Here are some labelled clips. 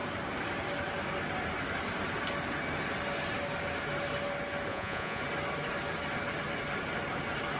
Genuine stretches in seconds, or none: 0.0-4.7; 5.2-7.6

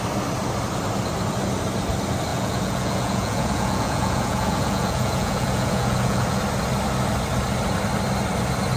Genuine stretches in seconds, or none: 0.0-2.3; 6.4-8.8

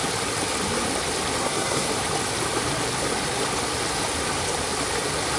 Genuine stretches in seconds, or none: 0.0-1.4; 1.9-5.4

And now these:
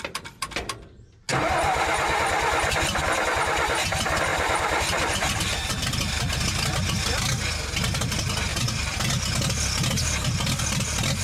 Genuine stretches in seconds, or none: 0.0-4.3; 5.9-8.5; 9.1-11.2

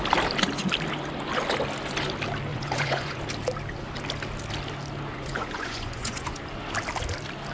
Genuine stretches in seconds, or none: 0.0-2.5; 3.2-5.1; 6.4-7.5

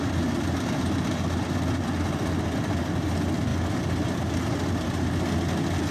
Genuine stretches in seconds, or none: 0.0-5.9

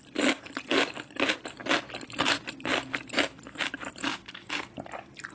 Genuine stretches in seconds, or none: 0.0-4.1

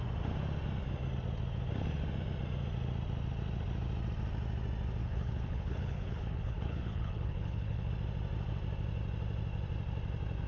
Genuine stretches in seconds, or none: 0.0-5.0; 7.9-10.5